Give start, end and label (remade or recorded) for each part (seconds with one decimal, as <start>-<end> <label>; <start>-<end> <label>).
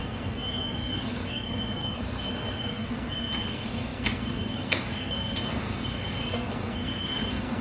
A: 0.0-7.6 remade